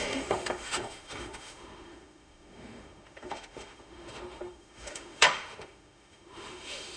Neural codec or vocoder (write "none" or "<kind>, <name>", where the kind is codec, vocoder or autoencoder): autoencoder, DAC-VAE